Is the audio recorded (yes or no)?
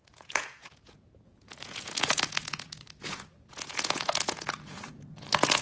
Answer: no